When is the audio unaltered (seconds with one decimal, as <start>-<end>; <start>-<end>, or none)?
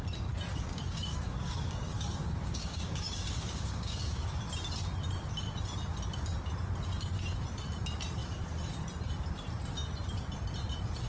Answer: 0.0-0.5; 4.4-11.1